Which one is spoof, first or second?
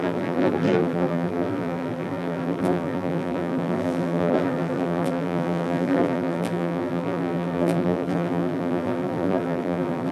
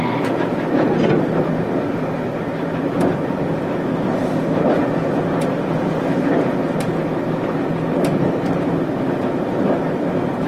first